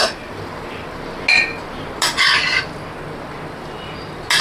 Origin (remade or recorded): recorded